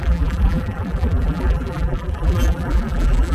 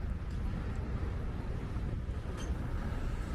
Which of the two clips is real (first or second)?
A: second